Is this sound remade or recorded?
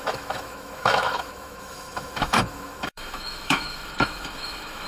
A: remade